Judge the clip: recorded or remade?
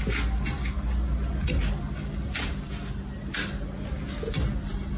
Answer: recorded